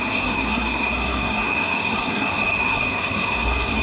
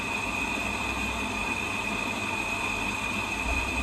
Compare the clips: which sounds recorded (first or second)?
second